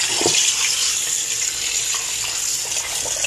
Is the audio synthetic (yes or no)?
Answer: no